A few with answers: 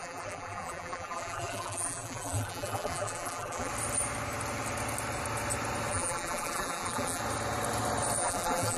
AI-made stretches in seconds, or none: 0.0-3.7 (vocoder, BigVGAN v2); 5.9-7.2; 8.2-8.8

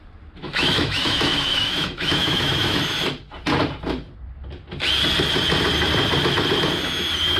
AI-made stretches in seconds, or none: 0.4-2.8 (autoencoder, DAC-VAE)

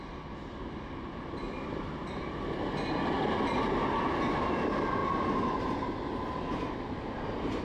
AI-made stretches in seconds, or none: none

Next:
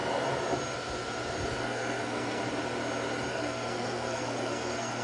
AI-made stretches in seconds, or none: 1.6-2.4 (codec, SNAC); 3.3-5.0